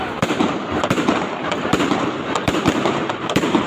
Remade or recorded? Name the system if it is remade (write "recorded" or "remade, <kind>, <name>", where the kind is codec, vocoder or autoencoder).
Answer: remade, vocoder, BigVGAN v2